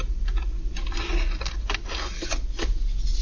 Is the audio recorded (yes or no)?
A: yes